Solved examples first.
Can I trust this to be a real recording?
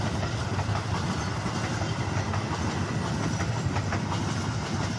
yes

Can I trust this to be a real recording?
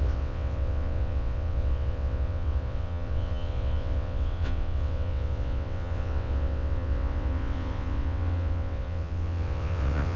no